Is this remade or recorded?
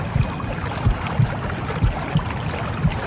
recorded